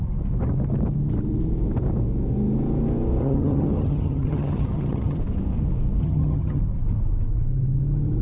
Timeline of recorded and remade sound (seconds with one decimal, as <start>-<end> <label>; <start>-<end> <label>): 0.0-3.2 recorded; 3.2-5.2 remade; 5.2-6.0 recorded; 6.0-6.6 remade; 6.6-8.2 recorded

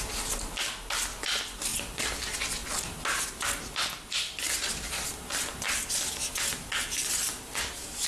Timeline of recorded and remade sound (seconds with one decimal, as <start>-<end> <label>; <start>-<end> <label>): 0.0-1.7 recorded; 1.7-2.2 remade; 2.2-8.1 recorded

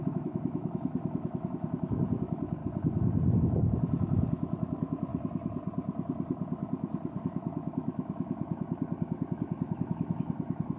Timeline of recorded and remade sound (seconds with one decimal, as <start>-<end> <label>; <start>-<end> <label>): 0.0-2.6 remade; 2.6-3.4 recorded; 3.4-5.1 remade; 5.1-7.2 recorded; 7.2-10.8 remade